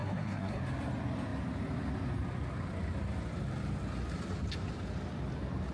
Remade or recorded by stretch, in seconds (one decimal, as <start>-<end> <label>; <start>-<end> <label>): 0.0-0.6 remade; 0.6-5.7 recorded